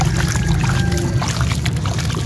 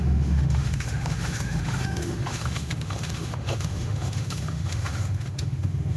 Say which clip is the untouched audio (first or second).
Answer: first